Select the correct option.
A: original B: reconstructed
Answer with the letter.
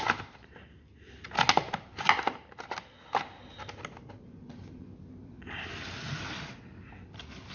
A